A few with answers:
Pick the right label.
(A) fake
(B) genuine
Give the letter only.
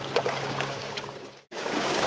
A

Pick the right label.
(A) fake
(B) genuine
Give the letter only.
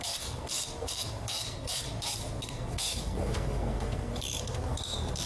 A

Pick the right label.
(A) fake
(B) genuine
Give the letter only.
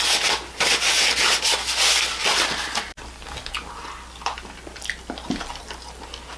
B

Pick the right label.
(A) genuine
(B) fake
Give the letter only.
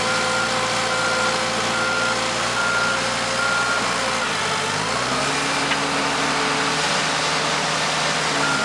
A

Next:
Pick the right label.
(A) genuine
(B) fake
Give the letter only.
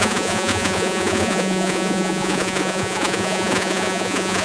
B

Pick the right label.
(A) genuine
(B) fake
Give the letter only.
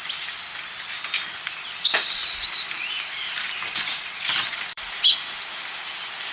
B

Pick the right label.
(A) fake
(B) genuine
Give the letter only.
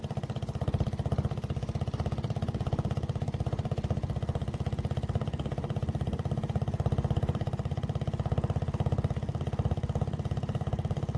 B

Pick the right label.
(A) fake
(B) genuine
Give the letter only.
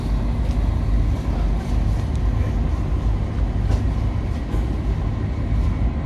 B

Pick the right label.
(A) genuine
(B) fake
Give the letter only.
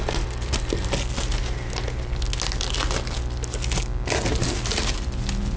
A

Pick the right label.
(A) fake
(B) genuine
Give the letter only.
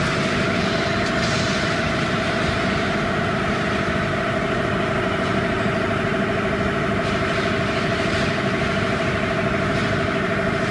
A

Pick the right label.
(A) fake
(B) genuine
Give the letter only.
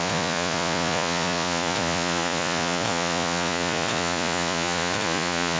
A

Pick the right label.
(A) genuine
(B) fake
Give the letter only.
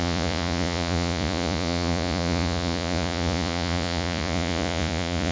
B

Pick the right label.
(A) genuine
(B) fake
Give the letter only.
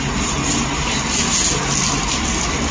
A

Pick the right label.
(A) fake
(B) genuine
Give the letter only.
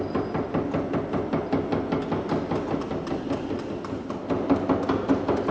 B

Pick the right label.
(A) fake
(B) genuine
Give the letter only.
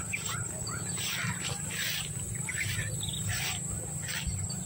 B